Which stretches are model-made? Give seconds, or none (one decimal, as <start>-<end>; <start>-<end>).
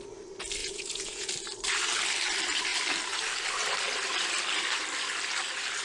0.6-1.3